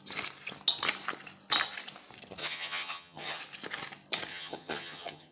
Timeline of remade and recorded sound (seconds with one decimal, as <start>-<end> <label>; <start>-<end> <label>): 0.0-2.4 recorded; 2.4-3.4 remade; 3.4-4.3 recorded; 4.3-5.3 remade